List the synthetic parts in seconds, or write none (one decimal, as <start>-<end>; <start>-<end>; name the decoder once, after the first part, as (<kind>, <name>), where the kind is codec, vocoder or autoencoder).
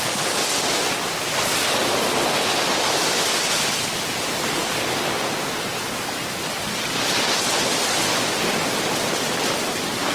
none